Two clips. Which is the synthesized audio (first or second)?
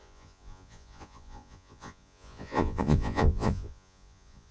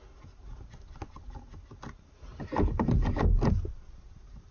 first